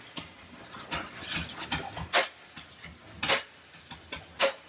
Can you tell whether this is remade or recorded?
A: recorded